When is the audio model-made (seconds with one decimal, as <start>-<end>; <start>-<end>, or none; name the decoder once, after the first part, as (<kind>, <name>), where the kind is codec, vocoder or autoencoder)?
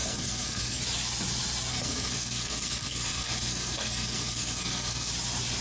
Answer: 0.0-0.8 (codec, SNAC); 1.7-5.1